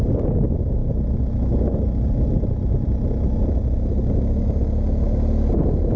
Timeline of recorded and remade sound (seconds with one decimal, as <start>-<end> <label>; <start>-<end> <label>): 0.0-6.0 recorded